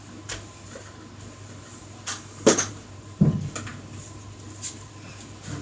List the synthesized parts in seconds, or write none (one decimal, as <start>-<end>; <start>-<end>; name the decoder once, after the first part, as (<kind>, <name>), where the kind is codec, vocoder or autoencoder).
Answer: 2.1-2.7 (codec, DAC)